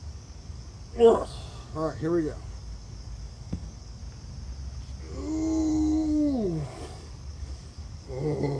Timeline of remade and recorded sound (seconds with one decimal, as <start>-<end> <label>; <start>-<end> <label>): 0.0-4.0 remade; 4.0-5.7 recorded; 5.7-8.6 remade